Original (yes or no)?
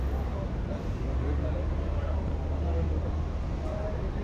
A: yes